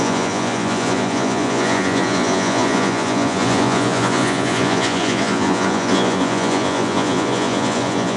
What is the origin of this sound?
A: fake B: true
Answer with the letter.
A